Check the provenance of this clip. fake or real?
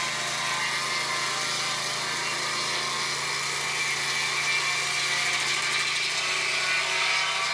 real